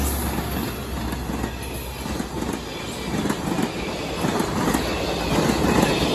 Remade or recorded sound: recorded